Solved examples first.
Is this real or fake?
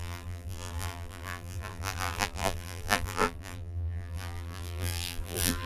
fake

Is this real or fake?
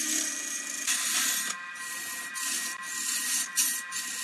real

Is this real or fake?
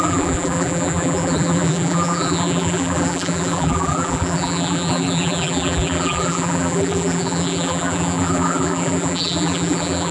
fake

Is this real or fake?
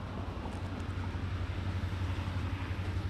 real